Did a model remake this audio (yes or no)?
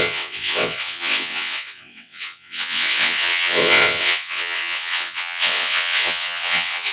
yes